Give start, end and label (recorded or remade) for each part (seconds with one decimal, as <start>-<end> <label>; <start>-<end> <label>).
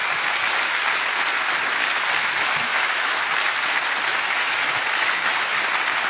0.0-2.7 recorded; 2.7-3.2 remade; 3.2-4.1 recorded; 4.1-5.6 remade; 5.6-6.1 recorded